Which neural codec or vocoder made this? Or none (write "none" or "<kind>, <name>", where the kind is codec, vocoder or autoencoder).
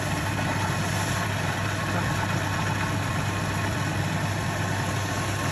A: none